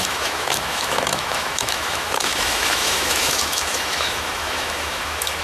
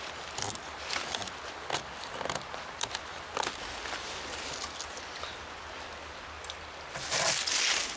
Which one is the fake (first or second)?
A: first